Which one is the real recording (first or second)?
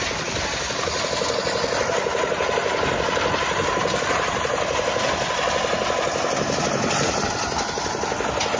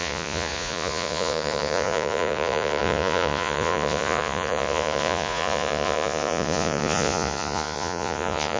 first